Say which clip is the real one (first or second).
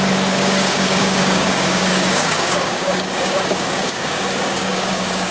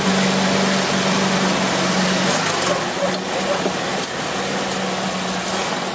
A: second